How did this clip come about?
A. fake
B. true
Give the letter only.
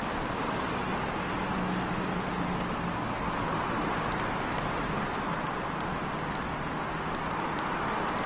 B